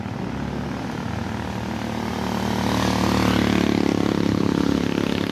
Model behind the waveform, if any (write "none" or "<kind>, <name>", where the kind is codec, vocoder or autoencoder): none